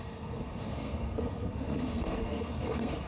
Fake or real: fake